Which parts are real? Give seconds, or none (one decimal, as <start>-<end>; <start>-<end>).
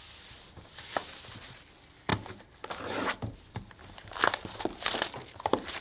0.0-1.0; 1.6-2.1